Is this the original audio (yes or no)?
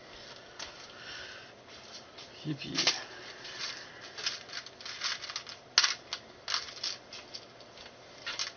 yes